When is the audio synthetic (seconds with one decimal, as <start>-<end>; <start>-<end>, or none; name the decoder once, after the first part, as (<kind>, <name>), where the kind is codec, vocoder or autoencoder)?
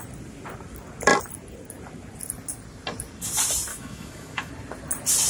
3.7-4.5 (autoencoder, DAC-VAE)